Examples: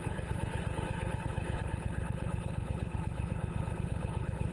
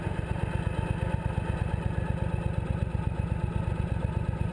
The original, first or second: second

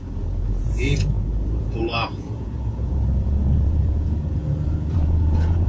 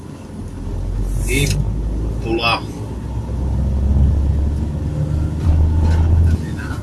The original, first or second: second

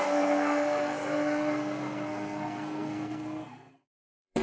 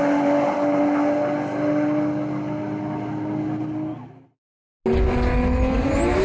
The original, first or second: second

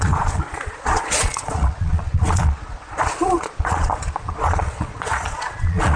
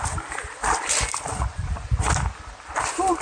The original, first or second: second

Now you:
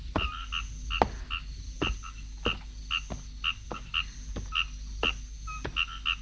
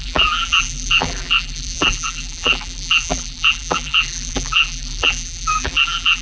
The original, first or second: first